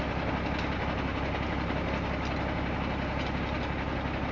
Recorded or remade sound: recorded